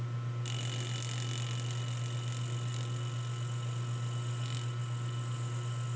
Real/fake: real